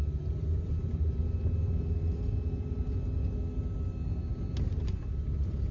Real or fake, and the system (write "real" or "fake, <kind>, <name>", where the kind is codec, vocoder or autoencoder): real